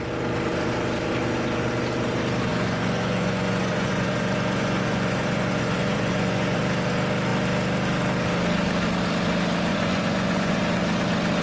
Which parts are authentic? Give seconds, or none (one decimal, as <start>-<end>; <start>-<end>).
0.0-2.5; 6.6-9.7; 10.6-11.4